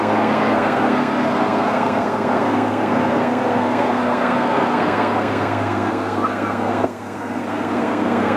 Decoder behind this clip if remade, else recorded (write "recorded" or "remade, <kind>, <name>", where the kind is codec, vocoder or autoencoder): remade, codec, SNAC